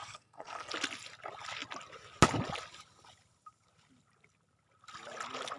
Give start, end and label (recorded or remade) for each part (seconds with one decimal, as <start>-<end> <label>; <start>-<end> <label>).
0.0-0.7 remade; 0.7-5.6 recorded